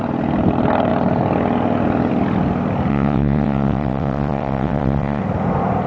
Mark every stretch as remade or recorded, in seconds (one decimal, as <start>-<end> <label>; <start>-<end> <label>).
0.0-2.9 recorded; 2.9-5.2 remade; 5.2-5.9 recorded